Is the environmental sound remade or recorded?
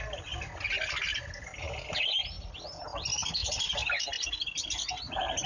recorded